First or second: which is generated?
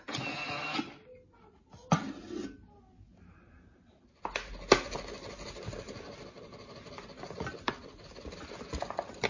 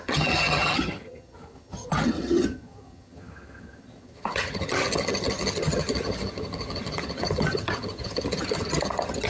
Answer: second